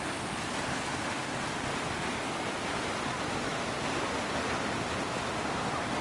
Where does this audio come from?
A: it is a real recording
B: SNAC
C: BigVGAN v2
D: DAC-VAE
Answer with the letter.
A